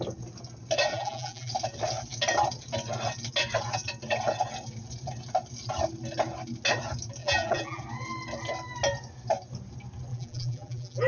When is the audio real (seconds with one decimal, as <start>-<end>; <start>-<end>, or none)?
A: 0.0-0.9; 1.5-7.2; 7.8-10.1